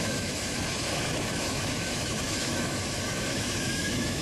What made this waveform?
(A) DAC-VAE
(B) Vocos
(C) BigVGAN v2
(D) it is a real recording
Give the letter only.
A